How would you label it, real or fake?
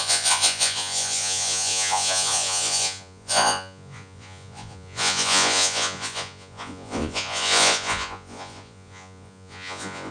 fake